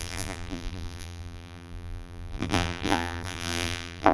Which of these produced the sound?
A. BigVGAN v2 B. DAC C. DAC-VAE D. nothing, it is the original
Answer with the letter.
A